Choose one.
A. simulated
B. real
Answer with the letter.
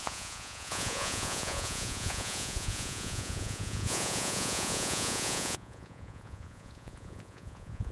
A